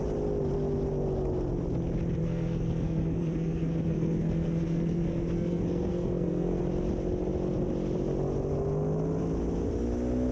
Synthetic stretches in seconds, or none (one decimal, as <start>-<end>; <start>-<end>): 2.2-6.6